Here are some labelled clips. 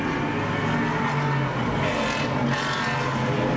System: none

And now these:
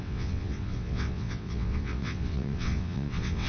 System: vocoder, WaveNeXt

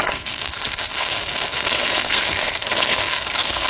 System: codec, SNAC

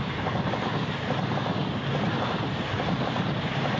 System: none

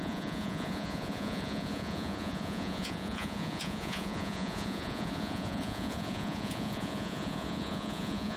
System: vocoder, Vocos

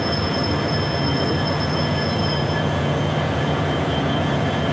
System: vocoder, Vocos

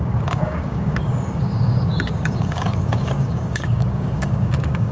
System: codec, DAC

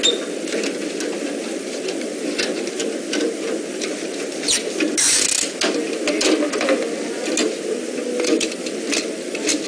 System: none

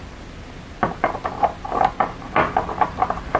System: none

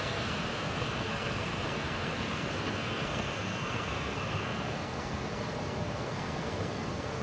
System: codec, SNAC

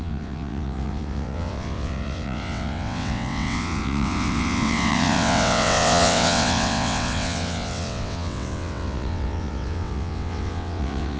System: vocoder, WaveNeXt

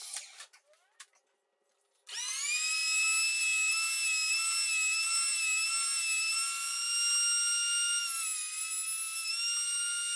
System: none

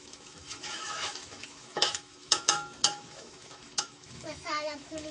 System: autoencoder, DAC-VAE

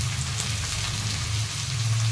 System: none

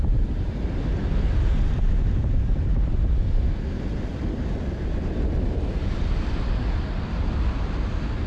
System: none